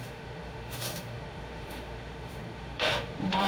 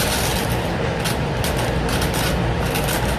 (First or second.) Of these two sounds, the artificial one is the first